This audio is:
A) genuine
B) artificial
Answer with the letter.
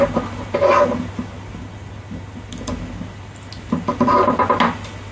A